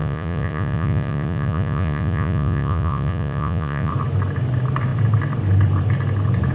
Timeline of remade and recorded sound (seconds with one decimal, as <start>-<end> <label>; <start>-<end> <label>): 0.0-3.9 remade; 3.9-6.5 recorded